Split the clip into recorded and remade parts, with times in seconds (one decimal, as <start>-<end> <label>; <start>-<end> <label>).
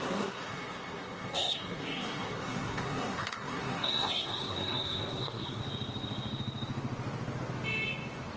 0.0-5.6 remade; 5.6-8.4 recorded